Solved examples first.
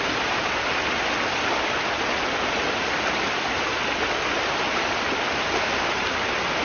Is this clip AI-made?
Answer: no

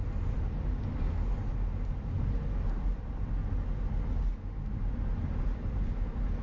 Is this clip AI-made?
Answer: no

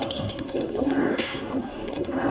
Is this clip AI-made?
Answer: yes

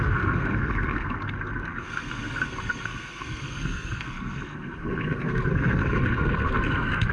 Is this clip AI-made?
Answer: yes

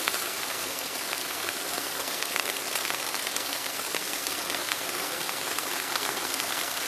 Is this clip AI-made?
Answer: yes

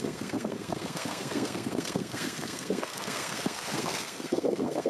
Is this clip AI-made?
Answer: yes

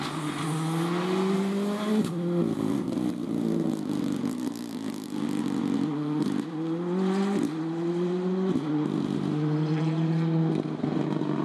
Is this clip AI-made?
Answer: no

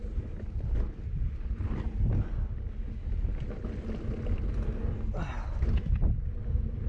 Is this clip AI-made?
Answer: no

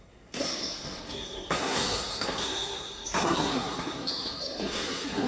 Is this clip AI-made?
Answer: yes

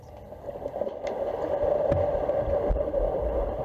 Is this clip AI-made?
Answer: no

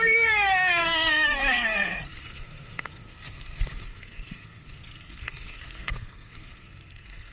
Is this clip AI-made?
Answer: yes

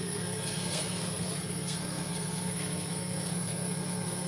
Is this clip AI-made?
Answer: yes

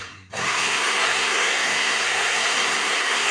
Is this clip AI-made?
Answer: yes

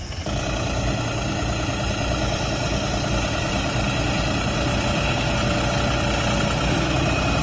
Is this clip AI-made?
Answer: no